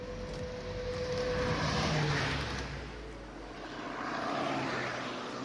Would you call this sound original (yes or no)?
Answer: yes